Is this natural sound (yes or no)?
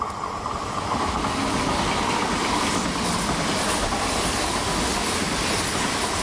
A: yes